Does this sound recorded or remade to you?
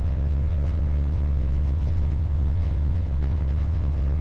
remade